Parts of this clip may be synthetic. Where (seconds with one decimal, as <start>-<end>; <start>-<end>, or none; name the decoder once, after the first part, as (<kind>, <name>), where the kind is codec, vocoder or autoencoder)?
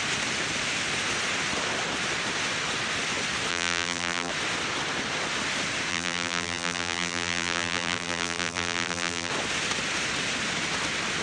3.5-4.3 (vocoder, BigVGAN v2); 5.9-9.3